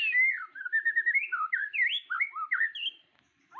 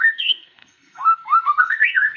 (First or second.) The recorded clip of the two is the first